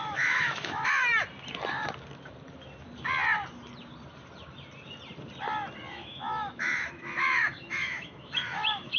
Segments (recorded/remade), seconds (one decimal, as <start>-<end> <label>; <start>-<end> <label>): 0.0-1.1 remade; 1.1-5.9 recorded; 5.9-9.0 remade